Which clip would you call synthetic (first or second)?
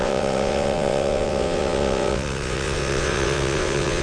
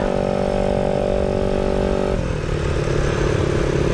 first